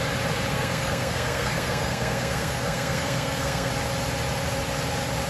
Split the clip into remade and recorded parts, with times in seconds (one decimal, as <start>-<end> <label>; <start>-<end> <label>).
0.0-0.5 recorded; 0.5-3.7 remade; 3.7-5.3 recorded